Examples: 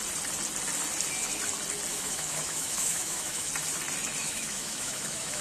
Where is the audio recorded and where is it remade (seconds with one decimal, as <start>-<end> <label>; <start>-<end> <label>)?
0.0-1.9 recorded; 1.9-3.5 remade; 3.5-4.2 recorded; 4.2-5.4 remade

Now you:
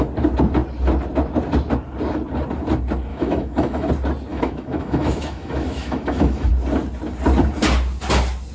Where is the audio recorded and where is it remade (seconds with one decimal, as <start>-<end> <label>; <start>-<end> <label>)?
0.0-3.1 recorded; 3.1-3.9 remade; 3.9-4.3 recorded; 4.3-6.5 remade; 6.5-8.5 recorded

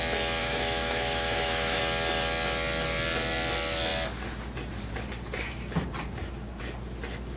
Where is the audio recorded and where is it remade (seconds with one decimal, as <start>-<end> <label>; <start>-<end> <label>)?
0.0-0.4 recorded; 0.4-1.8 remade; 1.8-7.4 recorded

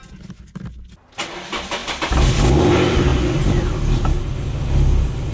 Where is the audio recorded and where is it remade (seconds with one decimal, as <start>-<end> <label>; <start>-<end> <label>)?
0.0-5.3 recorded